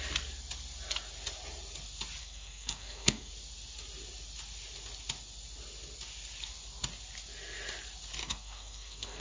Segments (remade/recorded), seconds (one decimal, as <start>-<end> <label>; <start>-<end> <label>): 0.0-2.2 recorded; 2.2-3.3 remade; 3.3-8.2 recorded; 8.2-9.2 remade